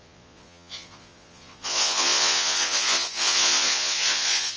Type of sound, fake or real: fake